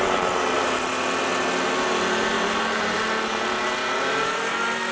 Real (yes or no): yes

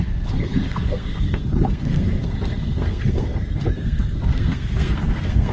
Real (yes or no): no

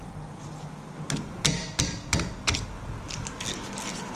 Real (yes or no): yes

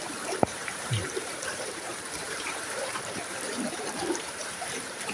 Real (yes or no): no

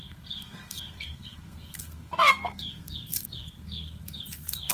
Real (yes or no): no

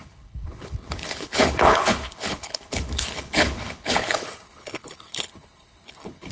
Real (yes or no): no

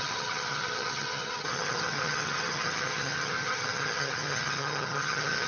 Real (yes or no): no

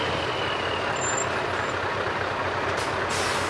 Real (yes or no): yes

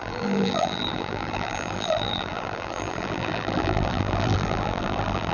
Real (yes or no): no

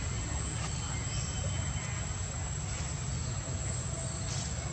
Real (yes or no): yes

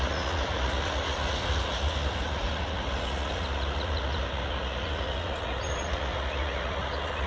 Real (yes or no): no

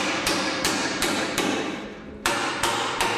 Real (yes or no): no